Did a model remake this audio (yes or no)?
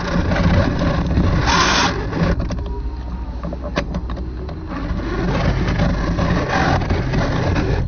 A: no